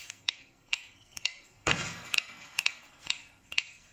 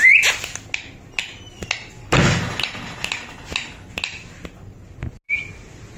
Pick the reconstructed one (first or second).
first